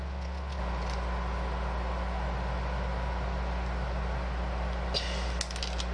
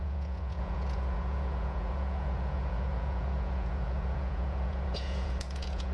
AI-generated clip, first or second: second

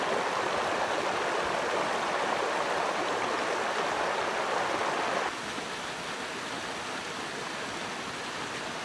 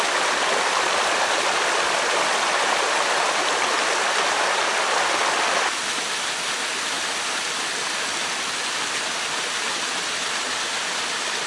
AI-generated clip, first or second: second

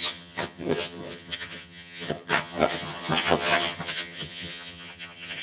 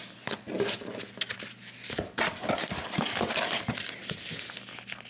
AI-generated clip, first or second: first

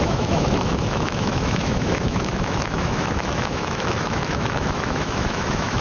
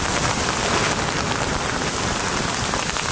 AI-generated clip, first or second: first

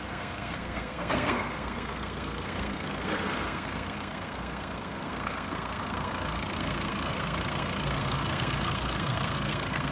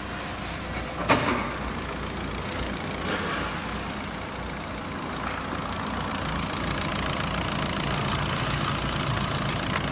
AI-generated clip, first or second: first